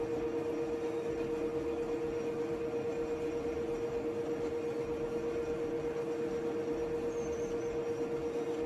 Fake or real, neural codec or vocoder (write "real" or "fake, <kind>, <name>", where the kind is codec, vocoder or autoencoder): real